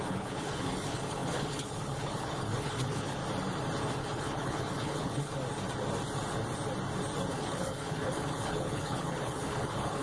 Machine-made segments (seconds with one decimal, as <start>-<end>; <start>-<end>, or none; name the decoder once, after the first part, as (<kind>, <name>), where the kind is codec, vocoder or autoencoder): 0.0-3.2 (codec, HILCodec); 4.0-5.3; 7.3-10.0